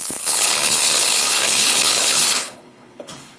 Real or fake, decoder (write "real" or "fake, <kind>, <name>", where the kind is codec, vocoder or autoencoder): fake, codec, HILCodec